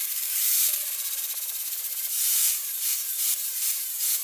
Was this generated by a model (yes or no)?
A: yes